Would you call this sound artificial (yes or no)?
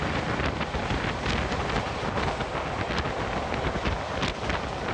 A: no